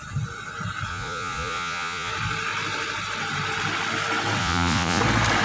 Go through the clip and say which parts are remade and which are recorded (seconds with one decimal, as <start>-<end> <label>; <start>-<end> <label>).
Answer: 0.0-0.9 recorded; 0.9-2.1 remade; 2.1-4.4 recorded; 4.4-5.0 remade; 5.0-5.4 recorded